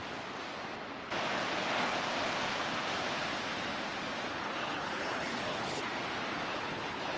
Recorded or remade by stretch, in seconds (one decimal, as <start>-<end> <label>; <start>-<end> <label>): 0.0-4.3 recorded; 4.3-5.9 remade; 5.9-6.5 recorded; 6.5-7.2 remade